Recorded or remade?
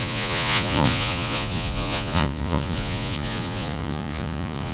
remade